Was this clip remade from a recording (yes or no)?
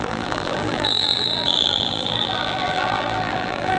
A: yes